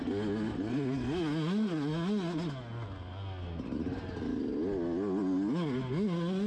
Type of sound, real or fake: real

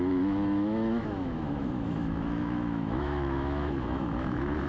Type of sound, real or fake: fake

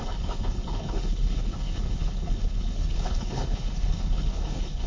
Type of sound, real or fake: fake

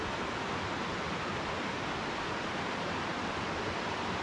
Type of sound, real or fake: real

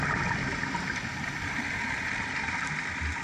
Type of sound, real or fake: real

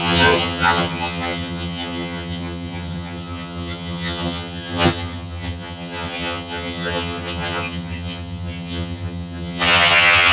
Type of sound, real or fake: fake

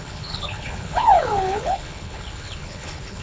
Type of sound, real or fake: fake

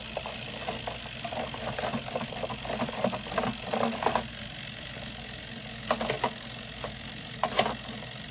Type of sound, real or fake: real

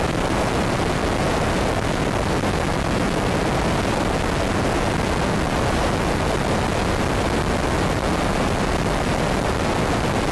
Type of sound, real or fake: real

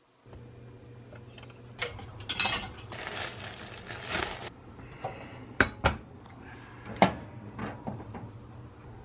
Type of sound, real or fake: real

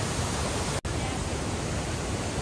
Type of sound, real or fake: real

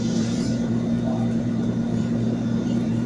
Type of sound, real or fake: fake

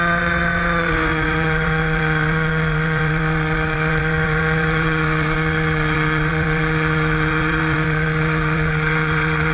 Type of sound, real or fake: fake